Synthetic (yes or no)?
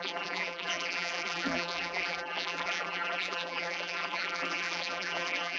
yes